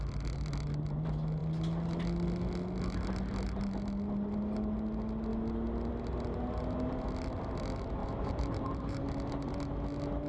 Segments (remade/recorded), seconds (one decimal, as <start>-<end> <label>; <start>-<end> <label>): 0.0-8.0 recorded; 8.0-9.0 remade; 9.0-10.3 recorded